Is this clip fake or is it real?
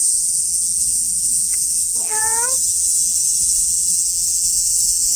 fake